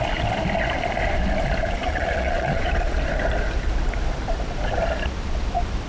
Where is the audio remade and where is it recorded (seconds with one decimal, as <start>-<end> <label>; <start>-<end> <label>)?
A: 0.0-1.8 recorded; 1.8-2.9 remade; 2.9-5.9 recorded